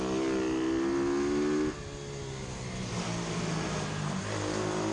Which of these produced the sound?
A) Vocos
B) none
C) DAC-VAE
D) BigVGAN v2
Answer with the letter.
B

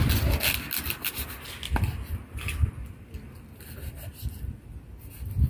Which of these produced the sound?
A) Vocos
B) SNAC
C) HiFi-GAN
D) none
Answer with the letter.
D